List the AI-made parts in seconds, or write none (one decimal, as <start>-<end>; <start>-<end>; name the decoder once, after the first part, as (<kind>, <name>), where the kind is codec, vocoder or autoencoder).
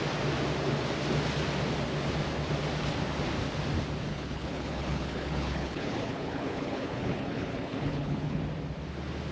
4.1-8.4 (codec, HILCodec)